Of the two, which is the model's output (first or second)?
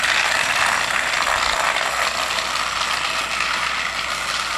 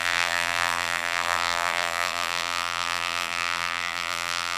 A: second